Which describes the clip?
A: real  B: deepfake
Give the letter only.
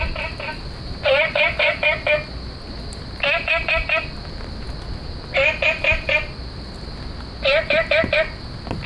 A